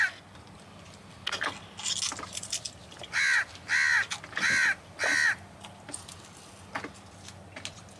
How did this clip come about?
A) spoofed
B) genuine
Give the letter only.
B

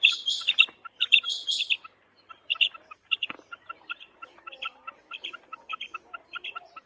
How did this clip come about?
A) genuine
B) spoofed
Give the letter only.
B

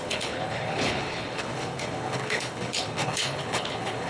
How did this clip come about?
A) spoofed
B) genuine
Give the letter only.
A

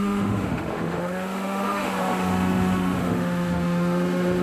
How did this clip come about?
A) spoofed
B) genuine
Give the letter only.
A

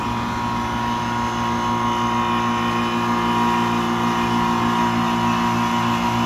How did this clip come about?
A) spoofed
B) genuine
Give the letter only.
B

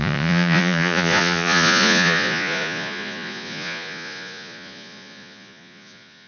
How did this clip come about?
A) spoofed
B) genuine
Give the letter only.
A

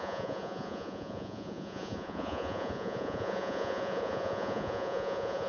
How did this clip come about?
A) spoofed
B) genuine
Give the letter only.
A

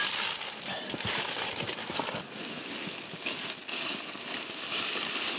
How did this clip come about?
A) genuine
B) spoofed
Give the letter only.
A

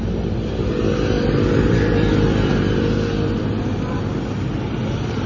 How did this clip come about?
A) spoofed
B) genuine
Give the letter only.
B